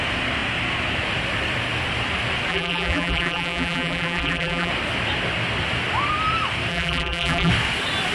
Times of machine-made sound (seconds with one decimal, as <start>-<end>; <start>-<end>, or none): 2.5-4.7; 6.7-7.5